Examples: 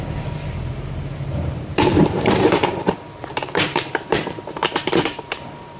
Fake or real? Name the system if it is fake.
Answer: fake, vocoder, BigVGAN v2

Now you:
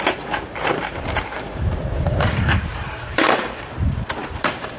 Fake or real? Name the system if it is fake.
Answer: fake, vocoder, BigVGAN v2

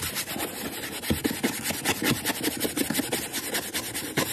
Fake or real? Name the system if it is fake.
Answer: real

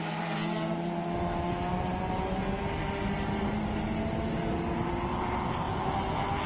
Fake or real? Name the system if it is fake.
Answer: real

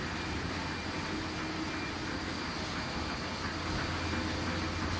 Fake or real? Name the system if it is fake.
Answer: real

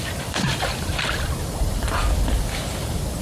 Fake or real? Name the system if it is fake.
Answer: fake, vocoder, BigVGAN v2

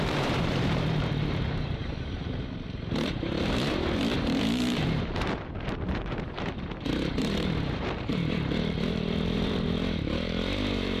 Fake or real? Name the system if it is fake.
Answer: fake, vocoder, BigVGAN v2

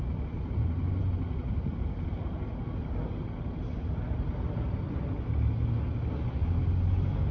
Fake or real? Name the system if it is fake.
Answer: real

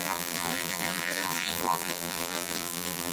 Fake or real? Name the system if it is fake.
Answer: fake, vocoder, BigVGAN v2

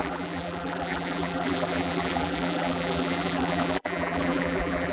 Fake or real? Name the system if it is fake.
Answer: fake, vocoder, BigVGAN v2